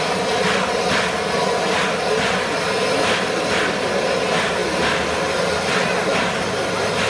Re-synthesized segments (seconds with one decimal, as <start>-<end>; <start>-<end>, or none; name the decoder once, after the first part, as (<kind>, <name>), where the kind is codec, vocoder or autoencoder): none